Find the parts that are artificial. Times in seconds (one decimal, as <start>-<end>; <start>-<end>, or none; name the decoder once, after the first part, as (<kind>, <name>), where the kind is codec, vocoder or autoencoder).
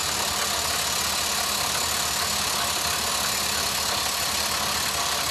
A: none